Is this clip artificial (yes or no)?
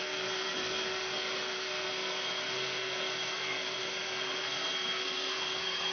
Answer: yes